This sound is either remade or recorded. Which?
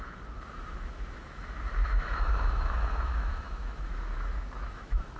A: remade